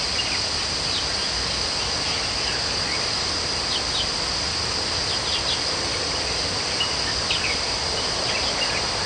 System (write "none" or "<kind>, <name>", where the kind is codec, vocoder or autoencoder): none